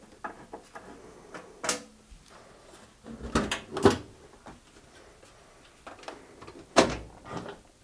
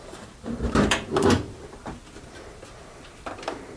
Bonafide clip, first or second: first